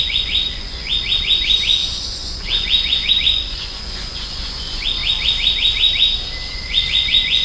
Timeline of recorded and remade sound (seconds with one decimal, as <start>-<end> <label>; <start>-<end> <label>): 0.0-5.0 remade; 5.0-6.5 recorded; 6.5-7.4 remade